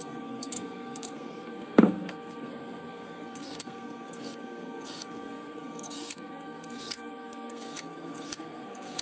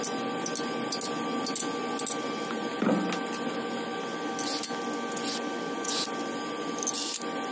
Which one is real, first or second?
second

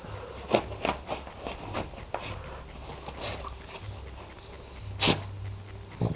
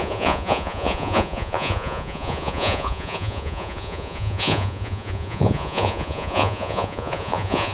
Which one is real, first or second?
first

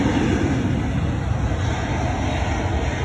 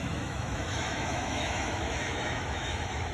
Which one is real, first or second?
first